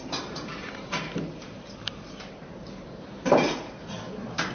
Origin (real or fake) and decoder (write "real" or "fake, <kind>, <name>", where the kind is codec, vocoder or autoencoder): fake, vocoder, BigVGAN v2